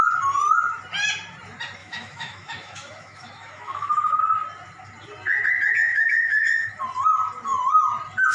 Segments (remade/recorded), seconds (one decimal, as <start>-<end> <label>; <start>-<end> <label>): 0.0-1.8 recorded; 1.8-4.2 remade; 4.2-5.8 recorded; 5.8-6.7 remade; 6.7-8.3 recorded